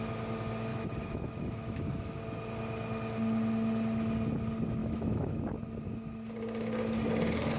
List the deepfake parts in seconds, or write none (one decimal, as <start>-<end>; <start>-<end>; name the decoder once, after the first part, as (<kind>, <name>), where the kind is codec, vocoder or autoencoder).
0.7-2.2 (autoencoder, DAC-VAE); 4.8-5.4